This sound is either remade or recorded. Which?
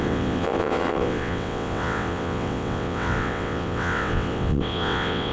remade